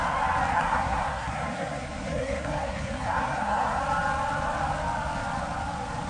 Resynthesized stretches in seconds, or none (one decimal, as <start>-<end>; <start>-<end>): 0.5-3.8